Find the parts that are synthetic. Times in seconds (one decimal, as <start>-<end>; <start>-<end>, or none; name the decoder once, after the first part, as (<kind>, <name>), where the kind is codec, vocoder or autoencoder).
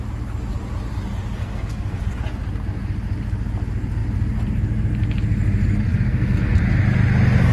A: 1.4-2.2 (codec, SNAC); 5.9-6.6